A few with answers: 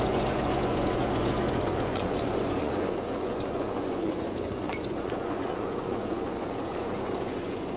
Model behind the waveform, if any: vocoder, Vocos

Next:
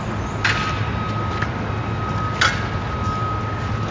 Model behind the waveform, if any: none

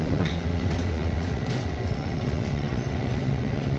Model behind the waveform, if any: vocoder, WaveNeXt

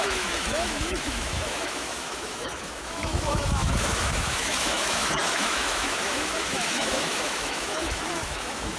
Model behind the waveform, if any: autoencoder, DAC-VAE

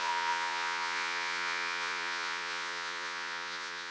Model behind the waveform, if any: vocoder, Vocos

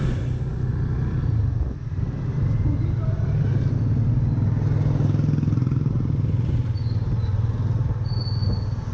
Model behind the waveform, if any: none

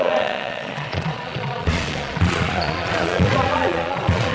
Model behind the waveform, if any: vocoder, Vocos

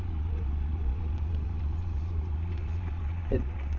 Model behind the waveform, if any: vocoder, Vocos